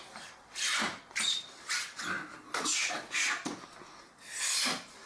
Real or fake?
real